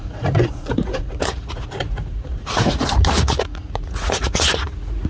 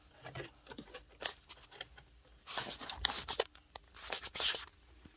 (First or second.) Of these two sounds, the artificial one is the first